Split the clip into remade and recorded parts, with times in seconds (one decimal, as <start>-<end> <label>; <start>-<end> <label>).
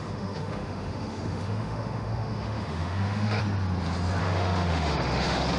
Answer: 0.0-3.4 remade; 3.4-4.2 recorded; 4.2-5.6 remade